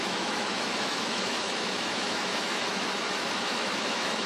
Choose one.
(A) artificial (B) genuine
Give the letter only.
A